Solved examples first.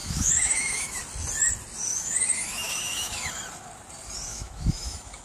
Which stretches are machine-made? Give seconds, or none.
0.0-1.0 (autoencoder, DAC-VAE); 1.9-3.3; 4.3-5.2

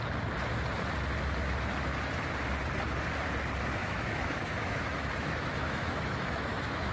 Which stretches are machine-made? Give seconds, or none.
3.8-6.9 (autoencoder, DAC-VAE)